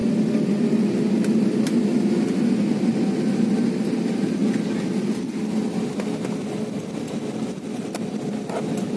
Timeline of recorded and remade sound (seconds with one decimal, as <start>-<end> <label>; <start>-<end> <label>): 0.0-9.0 recorded